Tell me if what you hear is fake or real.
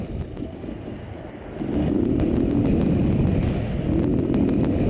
real